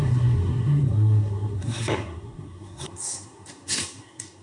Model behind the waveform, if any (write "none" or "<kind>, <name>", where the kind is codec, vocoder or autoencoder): codec, SNAC